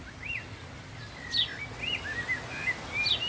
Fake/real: real